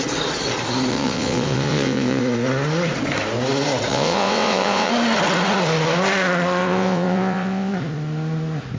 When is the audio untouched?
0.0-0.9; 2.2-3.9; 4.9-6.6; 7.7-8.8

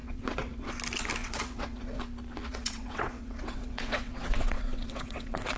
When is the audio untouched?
0.7-1.2; 2.0-2.4

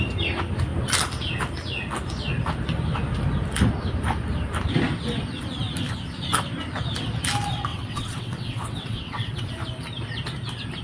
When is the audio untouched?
0.0-7.7; 9.5-10.8

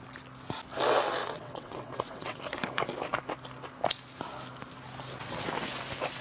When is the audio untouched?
0.0-1.2; 2.4-6.2